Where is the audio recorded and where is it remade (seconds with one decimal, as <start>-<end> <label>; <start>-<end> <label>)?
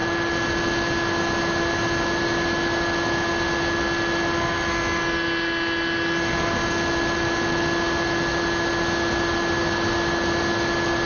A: 0.0-11.1 recorded